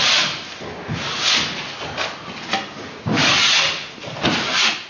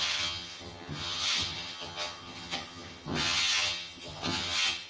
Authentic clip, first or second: first